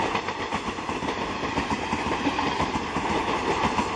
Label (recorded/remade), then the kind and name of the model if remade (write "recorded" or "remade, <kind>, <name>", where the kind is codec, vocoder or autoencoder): recorded